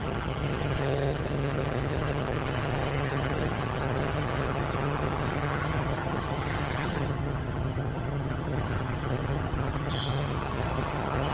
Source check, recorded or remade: remade